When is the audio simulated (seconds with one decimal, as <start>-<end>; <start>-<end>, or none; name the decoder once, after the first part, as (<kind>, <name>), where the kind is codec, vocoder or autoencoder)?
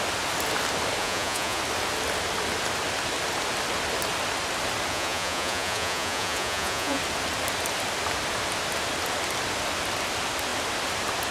1.0-1.6 (vocoder, Vocos); 4.9-7.0